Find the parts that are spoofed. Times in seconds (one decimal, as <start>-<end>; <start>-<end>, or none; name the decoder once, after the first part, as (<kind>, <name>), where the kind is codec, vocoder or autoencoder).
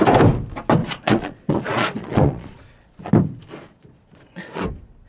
0.8-3.1 (vocoder, Vocos); 3.7-4.6